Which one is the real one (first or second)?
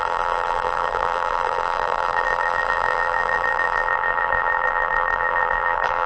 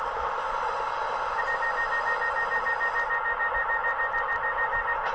second